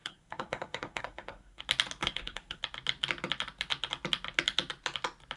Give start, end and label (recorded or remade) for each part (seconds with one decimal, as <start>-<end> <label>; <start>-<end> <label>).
0.0-1.6 remade; 1.6-2.0 recorded; 2.0-2.6 remade; 2.6-5.4 recorded